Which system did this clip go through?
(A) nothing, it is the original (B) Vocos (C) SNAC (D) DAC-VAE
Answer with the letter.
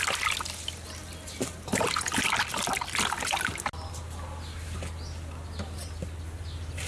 A